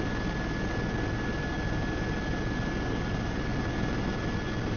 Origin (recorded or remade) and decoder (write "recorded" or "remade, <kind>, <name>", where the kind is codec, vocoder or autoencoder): recorded